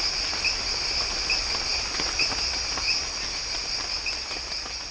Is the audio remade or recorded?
recorded